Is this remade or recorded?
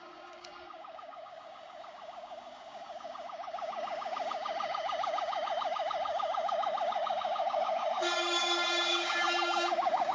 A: remade